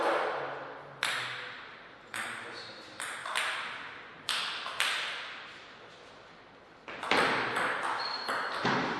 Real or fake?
real